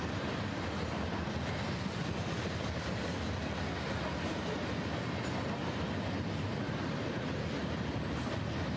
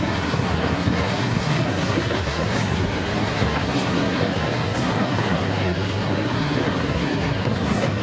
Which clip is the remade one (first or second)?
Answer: second